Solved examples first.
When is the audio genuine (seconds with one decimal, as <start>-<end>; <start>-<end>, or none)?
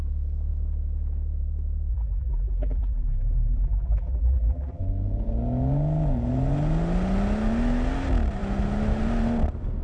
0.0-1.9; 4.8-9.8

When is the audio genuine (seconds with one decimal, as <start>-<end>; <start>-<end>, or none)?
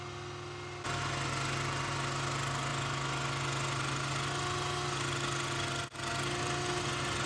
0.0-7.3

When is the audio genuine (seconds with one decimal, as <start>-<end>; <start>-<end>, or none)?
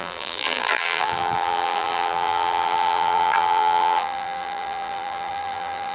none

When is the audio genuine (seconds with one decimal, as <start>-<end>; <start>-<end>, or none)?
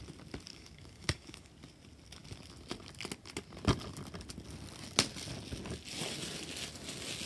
0.0-0.5; 1.5-7.3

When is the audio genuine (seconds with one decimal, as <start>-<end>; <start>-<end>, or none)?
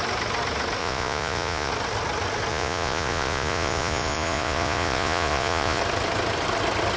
0.0-0.8; 1.7-2.5; 5.8-7.0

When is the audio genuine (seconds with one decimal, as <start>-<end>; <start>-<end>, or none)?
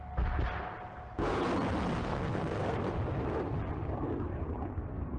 0.0-2.0; 2.9-5.2